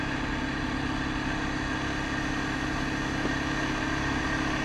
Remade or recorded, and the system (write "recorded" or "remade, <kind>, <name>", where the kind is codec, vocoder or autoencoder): recorded